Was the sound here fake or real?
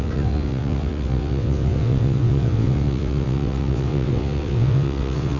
fake